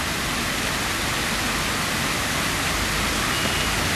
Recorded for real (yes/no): yes